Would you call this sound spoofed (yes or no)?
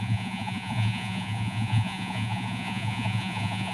yes